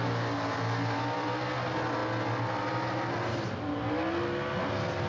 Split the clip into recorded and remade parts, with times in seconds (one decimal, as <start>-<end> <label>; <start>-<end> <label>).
0.0-5.1 recorded